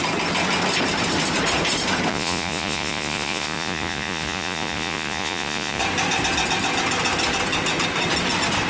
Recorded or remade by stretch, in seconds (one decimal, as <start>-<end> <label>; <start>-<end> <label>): 0.0-2.1 recorded; 2.1-5.8 remade; 5.8-8.7 recorded